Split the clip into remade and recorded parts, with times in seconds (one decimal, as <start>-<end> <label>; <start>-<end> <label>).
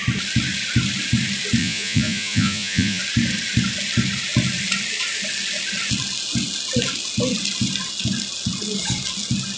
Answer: 0.0-1.6 recorded; 1.6-3.0 remade; 3.0-9.6 recorded